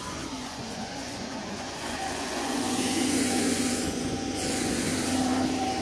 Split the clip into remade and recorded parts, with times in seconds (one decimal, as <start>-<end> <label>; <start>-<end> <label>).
0.0-4.9 remade; 4.9-5.8 recorded